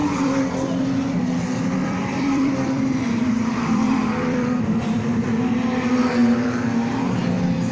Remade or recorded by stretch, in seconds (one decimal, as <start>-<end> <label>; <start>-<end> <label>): 0.0-0.8 remade; 0.8-1.8 recorded; 1.8-5.5 remade; 5.5-7.7 recorded